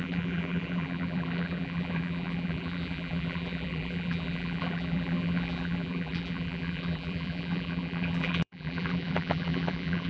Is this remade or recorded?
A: remade